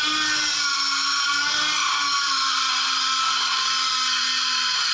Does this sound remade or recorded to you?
recorded